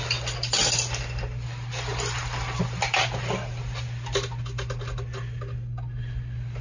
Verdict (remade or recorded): recorded